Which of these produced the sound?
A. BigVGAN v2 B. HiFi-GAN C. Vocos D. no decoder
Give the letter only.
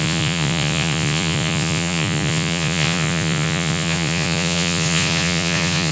C